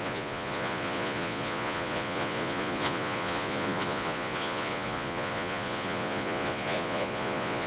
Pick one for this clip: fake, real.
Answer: fake